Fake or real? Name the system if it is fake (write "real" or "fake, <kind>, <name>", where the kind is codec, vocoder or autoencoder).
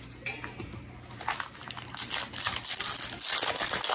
real